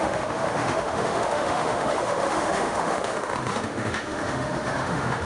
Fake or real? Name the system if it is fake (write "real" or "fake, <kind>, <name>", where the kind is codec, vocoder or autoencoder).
fake, autoencoder, DAC-VAE